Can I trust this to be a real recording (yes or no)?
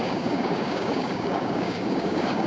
no